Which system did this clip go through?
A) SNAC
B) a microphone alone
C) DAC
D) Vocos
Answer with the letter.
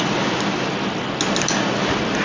B